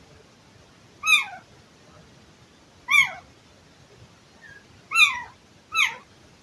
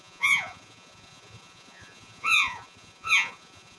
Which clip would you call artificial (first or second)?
second